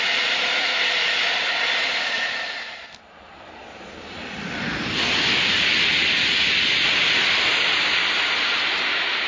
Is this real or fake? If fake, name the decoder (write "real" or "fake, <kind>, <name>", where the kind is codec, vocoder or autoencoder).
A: real